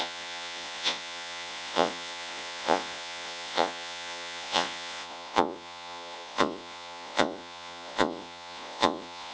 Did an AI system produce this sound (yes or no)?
yes